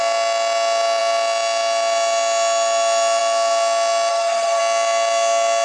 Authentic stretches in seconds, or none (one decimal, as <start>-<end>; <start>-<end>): 0.0-4.1; 4.6-5.6